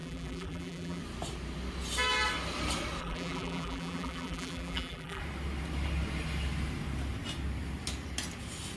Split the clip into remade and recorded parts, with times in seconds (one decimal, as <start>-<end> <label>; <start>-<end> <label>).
0.0-1.0 remade; 1.0-3.0 recorded; 3.0-5.2 remade; 5.2-8.8 recorded